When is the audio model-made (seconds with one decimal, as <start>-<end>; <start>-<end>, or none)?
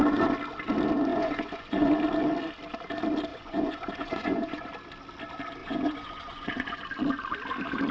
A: 1.1-1.9; 3.3-4.7; 5.6-6.8